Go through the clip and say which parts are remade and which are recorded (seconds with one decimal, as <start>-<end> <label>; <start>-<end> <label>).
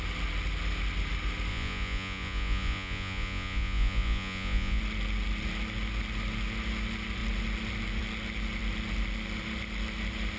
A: 0.0-1.5 recorded; 1.5-4.8 remade; 4.8-10.4 recorded